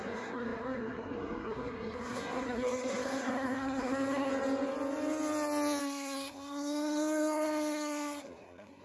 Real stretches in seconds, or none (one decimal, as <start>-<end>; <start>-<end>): 4.3-5.8